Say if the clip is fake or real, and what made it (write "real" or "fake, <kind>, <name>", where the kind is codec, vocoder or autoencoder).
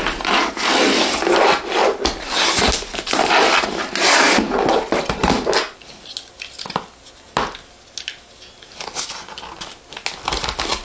real